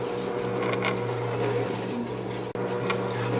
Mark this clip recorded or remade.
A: recorded